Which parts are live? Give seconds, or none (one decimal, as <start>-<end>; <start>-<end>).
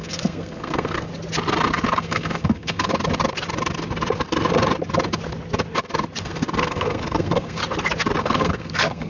1.1-2.0; 2.9-6.2; 7.6-8.2